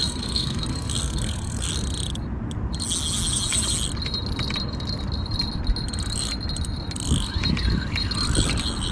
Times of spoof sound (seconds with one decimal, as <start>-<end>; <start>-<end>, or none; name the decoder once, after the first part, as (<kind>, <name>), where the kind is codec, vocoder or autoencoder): 0.0-1.7 (codec, SNAC)